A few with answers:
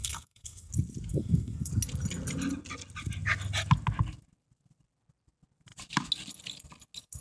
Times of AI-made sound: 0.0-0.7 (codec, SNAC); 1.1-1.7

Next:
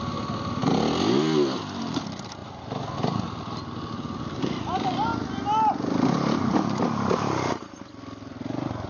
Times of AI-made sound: 0.0-0.6 (vocoder, BigVGAN v2); 1.6-2.4; 4.4-5.1; 6.4-8.9

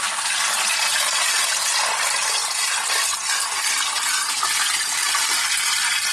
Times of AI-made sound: none

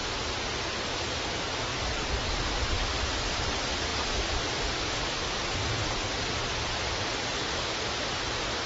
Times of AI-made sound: none

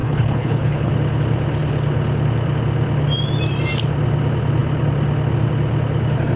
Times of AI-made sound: 0.0-0.9 (codec, HILCodec)

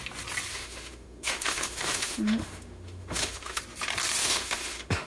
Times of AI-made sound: 0.5-3.6 (autoencoder, DAC-VAE); 4.2-5.1